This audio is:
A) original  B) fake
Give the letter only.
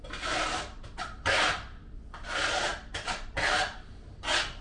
A